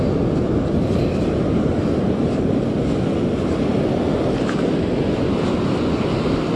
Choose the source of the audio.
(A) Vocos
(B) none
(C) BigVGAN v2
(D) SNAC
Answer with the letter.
B